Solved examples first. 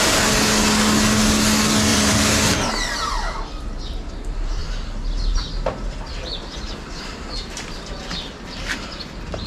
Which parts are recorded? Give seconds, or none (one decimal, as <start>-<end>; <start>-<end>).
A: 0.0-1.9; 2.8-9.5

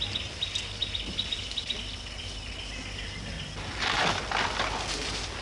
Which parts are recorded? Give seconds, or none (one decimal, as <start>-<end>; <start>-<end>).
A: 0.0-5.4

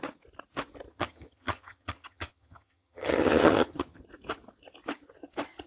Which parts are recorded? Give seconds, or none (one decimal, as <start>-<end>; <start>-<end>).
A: 0.0-0.9; 4.0-5.7